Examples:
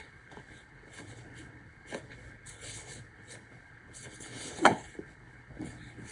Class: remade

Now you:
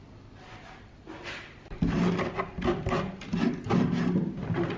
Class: recorded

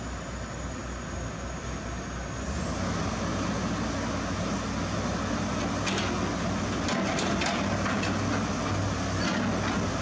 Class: recorded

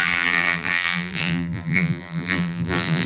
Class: remade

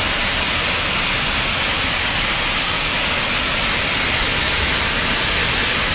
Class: recorded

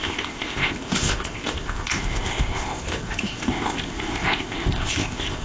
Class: remade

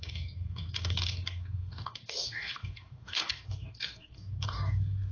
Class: remade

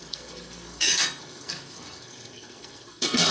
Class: remade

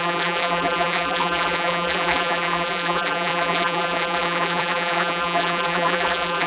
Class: remade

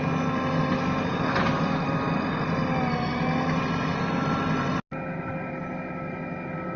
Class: recorded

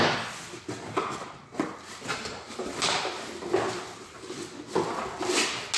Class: recorded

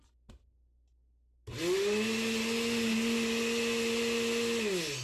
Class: recorded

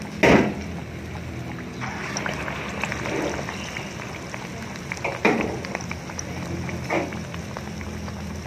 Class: recorded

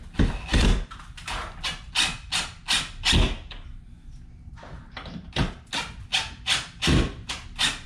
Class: recorded